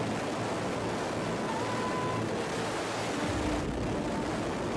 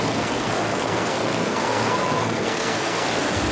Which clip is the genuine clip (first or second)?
first